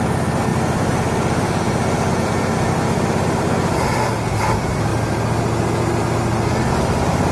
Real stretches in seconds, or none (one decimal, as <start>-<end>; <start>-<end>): 0.0-0.5; 2.7-7.3